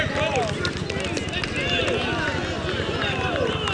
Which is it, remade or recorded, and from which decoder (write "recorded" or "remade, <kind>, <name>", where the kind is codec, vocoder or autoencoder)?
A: recorded